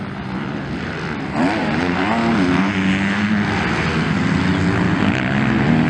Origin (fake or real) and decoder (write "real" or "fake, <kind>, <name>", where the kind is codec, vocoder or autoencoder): real